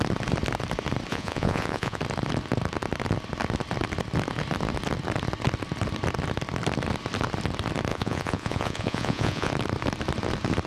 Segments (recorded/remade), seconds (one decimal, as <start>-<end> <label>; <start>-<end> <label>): 0.0-1.1 recorded; 1.1-2.0 remade; 2.0-7.9 recorded; 7.9-9.5 remade; 9.5-10.7 recorded